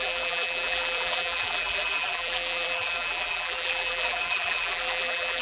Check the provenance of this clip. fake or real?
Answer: fake